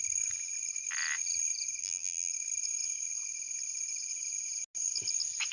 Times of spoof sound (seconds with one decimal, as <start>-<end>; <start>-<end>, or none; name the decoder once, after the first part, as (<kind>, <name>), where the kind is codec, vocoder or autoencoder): 1.8-2.3 (vocoder, BigVGAN v2)